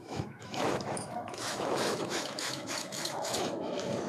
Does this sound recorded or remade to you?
remade